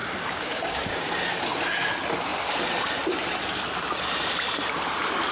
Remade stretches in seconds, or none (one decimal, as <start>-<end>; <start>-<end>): 0.0-1.0